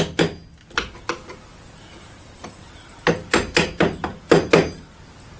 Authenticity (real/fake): real